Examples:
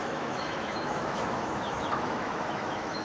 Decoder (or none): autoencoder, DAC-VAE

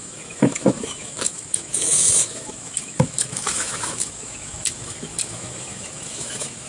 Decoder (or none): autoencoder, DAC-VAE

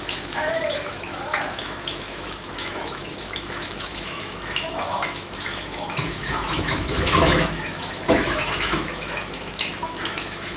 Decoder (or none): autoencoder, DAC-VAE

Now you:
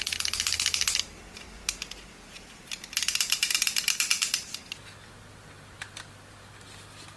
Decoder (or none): none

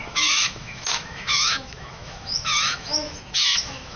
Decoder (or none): autoencoder, DAC-VAE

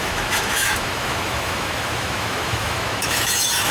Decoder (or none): autoencoder, DAC-VAE